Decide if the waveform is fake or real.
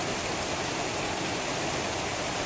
real